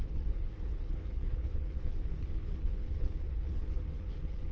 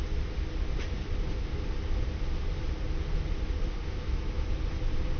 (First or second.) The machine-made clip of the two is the first